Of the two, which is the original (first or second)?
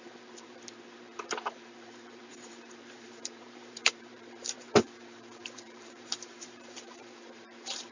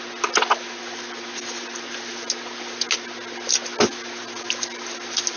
second